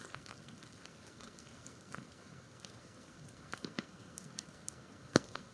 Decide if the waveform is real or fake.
fake